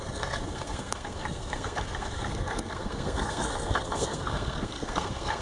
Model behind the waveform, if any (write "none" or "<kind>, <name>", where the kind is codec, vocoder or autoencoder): codec, SNAC